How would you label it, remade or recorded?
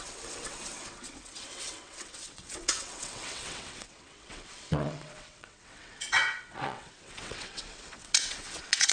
remade